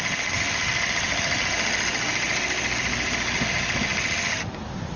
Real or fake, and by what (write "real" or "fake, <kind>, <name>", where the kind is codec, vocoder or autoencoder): real